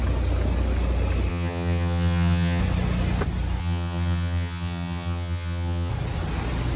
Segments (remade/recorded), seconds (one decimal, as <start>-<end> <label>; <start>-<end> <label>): 0.0-1.3 recorded; 1.3-2.6 remade; 2.6-3.6 recorded; 3.6-5.9 remade; 5.9-6.8 recorded